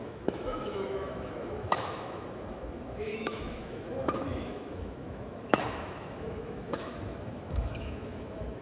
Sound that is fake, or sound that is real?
fake